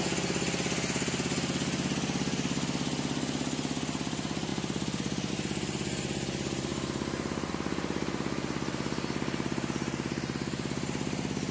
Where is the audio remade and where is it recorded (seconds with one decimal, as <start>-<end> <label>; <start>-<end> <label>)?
0.0-11.5 recorded